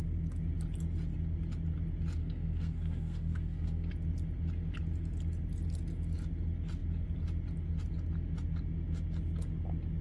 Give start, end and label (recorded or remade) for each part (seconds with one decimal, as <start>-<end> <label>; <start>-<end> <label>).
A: 0.0-2.2 recorded; 2.2-3.9 remade; 3.9-10.0 recorded